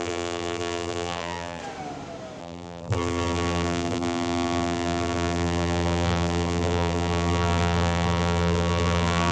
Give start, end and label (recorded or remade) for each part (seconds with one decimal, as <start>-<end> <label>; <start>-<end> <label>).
0.0-1.6 remade; 1.6-2.4 recorded; 2.4-9.3 remade

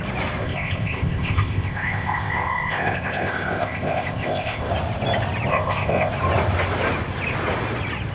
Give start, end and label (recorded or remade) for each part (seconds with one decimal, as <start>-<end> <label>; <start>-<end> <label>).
0.0-0.4 recorded; 0.4-4.7 remade; 4.7-5.5 recorded; 5.5-6.1 remade; 6.1-8.1 recorded

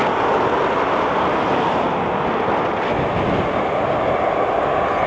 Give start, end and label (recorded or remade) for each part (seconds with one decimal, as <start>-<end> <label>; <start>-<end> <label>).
0.0-5.1 recorded

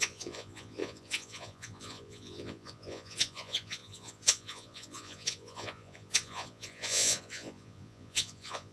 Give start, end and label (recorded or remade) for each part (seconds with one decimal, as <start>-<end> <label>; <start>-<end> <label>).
0.0-8.7 remade

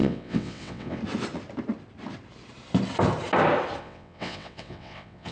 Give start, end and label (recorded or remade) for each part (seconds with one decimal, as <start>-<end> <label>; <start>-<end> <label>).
0.0-1.0 remade; 1.0-3.8 recorded; 3.8-5.3 remade

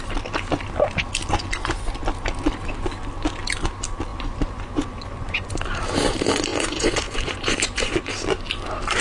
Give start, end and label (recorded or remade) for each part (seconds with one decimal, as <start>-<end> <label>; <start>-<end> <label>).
0.0-4.1 recorded; 4.1-5.5 remade; 5.5-6.5 recorded; 6.5-8.1 remade; 8.1-9.0 recorded